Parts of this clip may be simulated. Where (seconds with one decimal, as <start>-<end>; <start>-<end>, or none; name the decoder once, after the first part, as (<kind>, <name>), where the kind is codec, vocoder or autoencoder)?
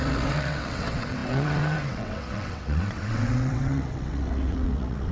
0.0-5.1 (vocoder, WaveNeXt)